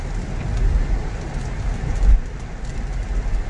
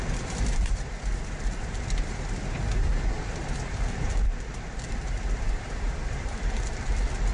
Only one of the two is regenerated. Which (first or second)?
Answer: second